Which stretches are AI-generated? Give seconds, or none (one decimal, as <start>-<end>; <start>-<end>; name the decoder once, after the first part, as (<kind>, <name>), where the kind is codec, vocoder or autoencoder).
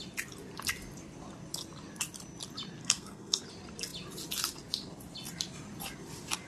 2.8-3.4 (codec, SNAC)